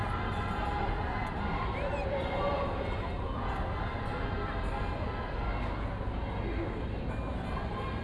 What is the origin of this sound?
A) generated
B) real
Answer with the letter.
B